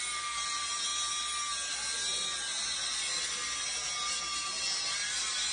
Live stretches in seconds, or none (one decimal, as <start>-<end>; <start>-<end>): 0.0-5.5